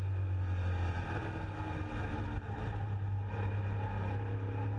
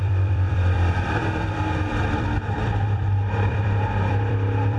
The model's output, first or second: second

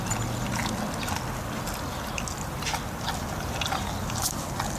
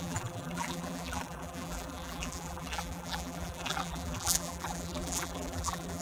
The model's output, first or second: second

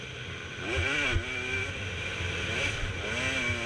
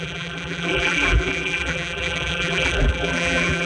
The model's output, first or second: second